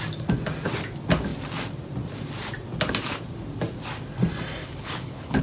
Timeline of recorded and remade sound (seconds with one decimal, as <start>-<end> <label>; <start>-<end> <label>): 0.0-4.6 recorded; 4.6-5.4 remade